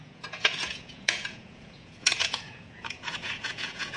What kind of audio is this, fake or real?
fake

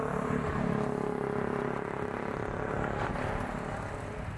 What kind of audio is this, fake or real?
real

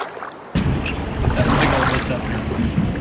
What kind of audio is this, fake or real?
real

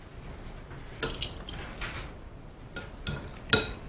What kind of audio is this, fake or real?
real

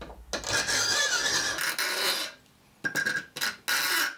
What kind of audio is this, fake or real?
real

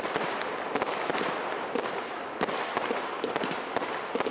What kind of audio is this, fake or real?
real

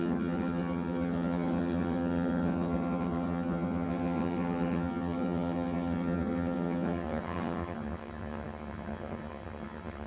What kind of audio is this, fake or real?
fake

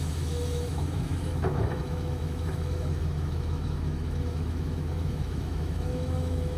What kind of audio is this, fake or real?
fake